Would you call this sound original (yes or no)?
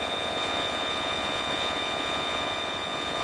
no